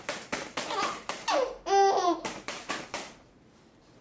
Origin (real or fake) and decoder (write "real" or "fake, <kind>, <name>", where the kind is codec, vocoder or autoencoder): fake, vocoder, BigVGAN v2